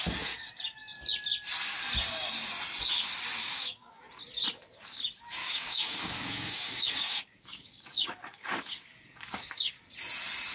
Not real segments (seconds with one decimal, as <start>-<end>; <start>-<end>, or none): 3.4-4.0; 5.4-9.8